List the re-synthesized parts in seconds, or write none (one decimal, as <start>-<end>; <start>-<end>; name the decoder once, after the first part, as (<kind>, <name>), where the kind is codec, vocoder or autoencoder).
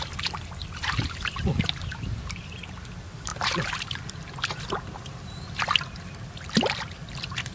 0.0-7.5 (vocoder, BigVGAN v2)